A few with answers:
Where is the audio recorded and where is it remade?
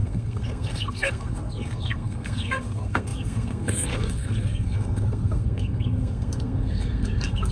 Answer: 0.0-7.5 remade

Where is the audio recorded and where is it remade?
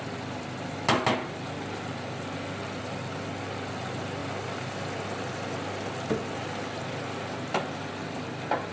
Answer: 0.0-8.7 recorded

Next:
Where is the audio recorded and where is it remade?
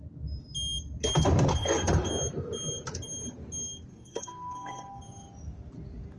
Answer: 0.0-1.5 recorded; 1.5-2.1 remade; 2.1-3.9 recorded; 3.9-5.0 remade; 5.0-6.2 recorded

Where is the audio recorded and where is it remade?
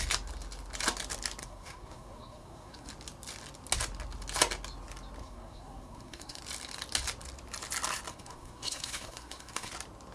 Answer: 0.0-1.4 recorded; 1.4-2.9 remade; 2.9-5.2 recorded; 5.2-6.4 remade; 6.4-8.1 recorded; 8.1-9.7 remade; 9.7-10.1 recorded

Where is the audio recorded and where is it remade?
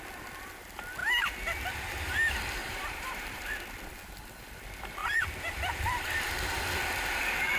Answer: 0.0-2.6 recorded; 2.6-3.4 remade; 3.4-5.0 recorded; 5.0-6.3 remade; 6.3-7.6 recorded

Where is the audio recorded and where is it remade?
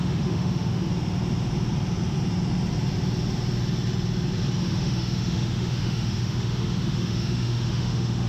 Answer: 0.0-0.9 remade; 0.9-4.6 recorded; 4.6-8.3 remade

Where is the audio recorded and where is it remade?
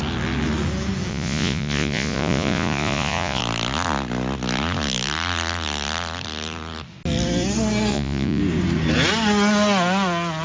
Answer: 0.0-1.1 recorded; 1.1-3.4 remade; 3.4-7.9 recorded; 7.9-8.4 remade; 8.4-10.4 recorded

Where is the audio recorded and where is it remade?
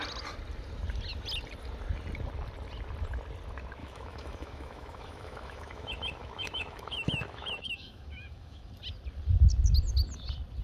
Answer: 0.0-3.8 recorded; 3.8-8.7 remade; 8.7-10.6 recorded